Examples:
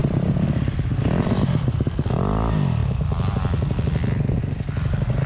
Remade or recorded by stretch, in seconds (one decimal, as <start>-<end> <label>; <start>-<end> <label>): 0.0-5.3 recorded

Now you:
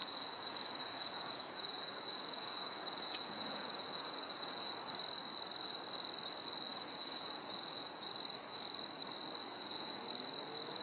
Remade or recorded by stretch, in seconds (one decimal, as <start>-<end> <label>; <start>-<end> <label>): 0.0-4.7 remade; 4.7-6.7 recorded; 6.7-8.1 remade; 8.1-9.4 recorded; 9.4-10.0 remade; 10.0-10.8 recorded

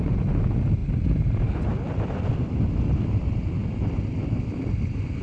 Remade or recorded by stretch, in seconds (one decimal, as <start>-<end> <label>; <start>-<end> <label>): 0.0-5.2 recorded

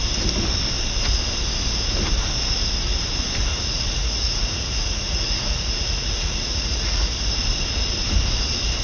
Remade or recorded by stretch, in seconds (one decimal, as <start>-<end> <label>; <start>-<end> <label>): 0.0-3.5 recorded; 3.5-7.3 remade; 7.3-8.8 recorded

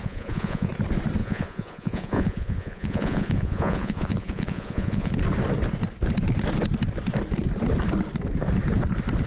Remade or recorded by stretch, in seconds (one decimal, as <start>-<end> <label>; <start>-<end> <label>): 0.0-0.7 remade; 0.7-1.2 recorded; 1.2-5.1 remade; 5.1-9.3 recorded

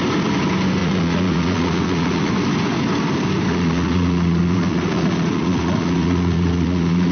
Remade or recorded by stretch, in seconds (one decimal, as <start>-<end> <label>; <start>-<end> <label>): 0.0-0.8 recorded; 0.8-2.3 remade; 2.3-3.5 recorded; 3.5-7.1 remade

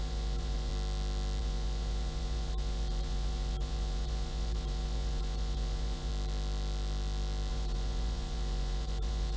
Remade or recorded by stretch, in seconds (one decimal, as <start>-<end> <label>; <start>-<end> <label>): 0.0-0.7 remade; 0.7-1.4 recorded; 1.4-6.1 remade; 6.1-7.5 recorded; 7.5-9.4 remade